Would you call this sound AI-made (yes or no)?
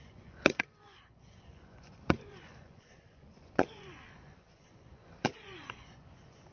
yes